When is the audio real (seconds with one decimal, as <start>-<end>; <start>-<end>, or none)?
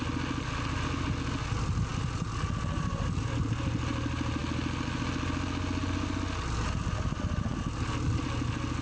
0.0-8.8